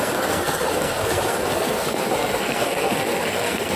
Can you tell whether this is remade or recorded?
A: remade